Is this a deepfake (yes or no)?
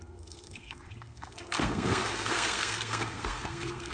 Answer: yes